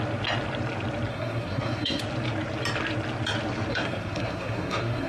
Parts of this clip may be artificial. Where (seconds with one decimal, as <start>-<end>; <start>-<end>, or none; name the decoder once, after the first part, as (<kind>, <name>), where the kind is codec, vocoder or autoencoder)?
1.1-2.0 (codec, SNAC); 3.7-5.1